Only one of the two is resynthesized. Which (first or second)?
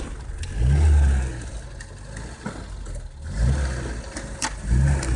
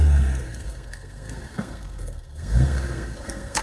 second